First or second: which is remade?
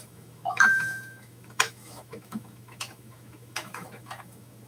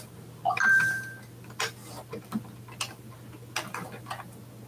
first